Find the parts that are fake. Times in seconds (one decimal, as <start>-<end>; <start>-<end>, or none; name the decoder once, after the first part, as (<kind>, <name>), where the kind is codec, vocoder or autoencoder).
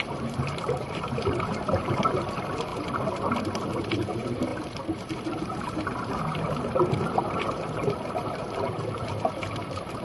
0.0-2.7 (vocoder, BigVGAN v2); 3.8-10.0